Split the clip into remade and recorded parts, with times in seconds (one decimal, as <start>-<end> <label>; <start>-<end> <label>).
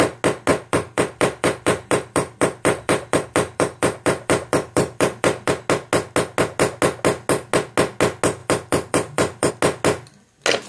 0.0-0.5 recorded; 0.5-5.5 remade; 5.5-8.4 recorded; 8.4-9.5 remade; 9.5-10.7 recorded